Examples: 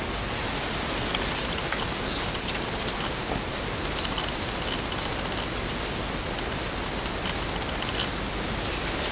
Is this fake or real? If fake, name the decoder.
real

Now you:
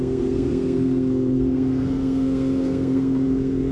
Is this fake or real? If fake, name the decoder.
fake, codec, SNAC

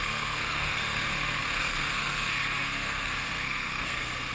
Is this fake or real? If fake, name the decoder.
fake, codec, SNAC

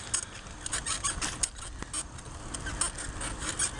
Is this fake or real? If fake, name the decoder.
real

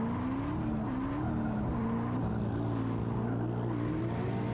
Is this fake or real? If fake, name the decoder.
real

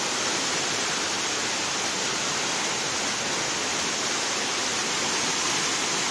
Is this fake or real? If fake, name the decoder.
real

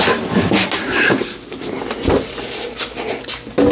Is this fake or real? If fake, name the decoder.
real